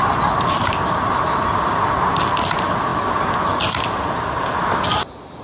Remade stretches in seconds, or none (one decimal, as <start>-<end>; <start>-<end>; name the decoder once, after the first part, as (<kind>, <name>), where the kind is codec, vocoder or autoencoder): none